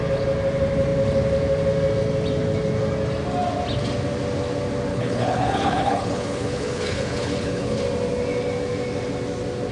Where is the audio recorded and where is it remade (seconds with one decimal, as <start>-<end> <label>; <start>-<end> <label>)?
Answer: 0.0-4.9 recorded; 4.9-7.8 remade; 7.8-9.7 recorded